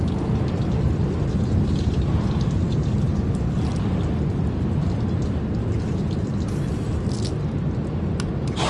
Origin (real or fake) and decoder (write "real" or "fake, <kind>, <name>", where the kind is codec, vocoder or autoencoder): real